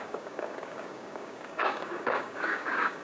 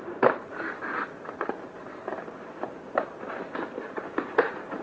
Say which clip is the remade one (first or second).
first